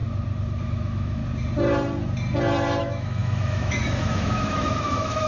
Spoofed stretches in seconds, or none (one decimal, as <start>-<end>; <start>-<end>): 0.6-1.2; 2.8-5.3